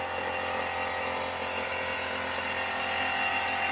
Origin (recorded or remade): recorded